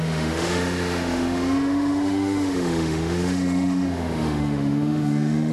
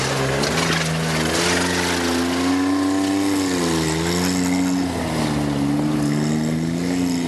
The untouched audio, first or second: second